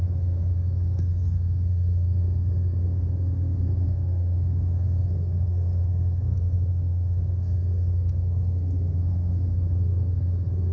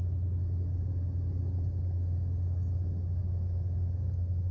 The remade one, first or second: first